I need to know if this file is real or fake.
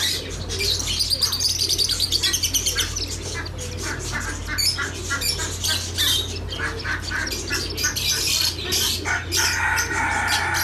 real